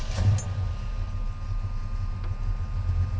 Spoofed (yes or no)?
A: no